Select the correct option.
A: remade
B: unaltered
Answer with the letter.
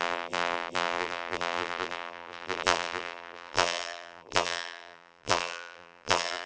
A